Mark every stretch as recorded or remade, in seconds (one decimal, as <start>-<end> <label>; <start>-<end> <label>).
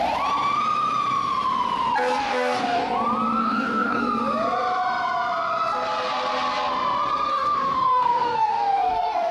0.0-2.2 recorded; 2.2-2.8 remade; 2.8-3.4 recorded; 3.4-4.0 remade; 4.0-7.3 recorded; 7.3-9.3 remade